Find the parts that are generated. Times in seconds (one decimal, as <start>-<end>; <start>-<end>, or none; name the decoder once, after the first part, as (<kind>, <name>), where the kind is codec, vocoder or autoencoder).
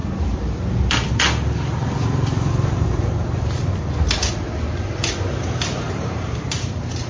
4.3-7.1 (vocoder, BigVGAN v2)